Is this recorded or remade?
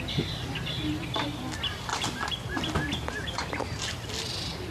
recorded